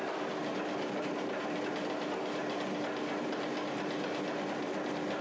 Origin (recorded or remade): recorded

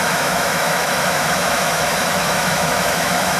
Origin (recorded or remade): remade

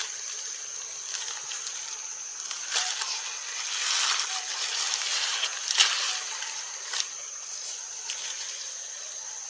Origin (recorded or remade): recorded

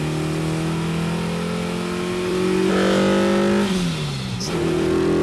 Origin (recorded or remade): recorded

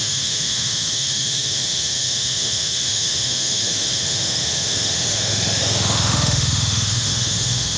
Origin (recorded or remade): remade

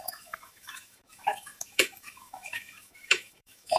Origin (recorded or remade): remade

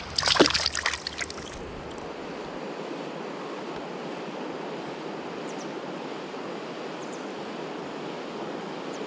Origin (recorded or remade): recorded